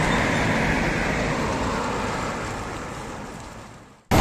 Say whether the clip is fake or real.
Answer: real